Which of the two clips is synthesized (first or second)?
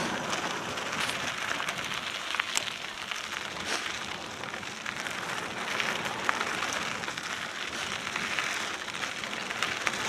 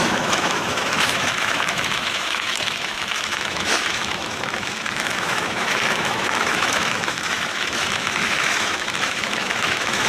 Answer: second